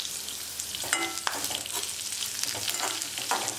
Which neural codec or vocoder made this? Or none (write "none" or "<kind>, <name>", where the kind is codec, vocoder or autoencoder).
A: none